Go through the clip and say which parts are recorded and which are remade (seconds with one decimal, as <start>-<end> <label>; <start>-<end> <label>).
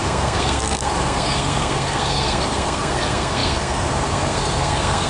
0.0-5.1 remade